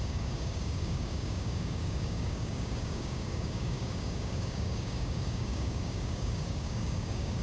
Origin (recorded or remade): remade